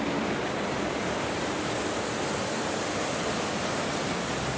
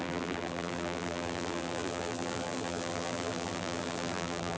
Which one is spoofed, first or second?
second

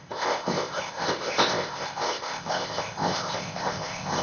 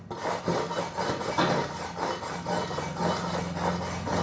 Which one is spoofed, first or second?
first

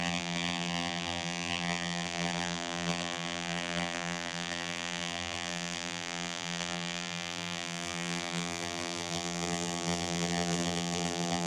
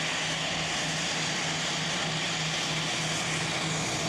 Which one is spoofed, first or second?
first